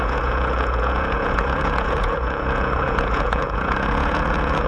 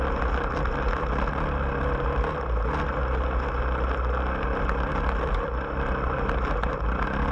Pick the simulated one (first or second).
first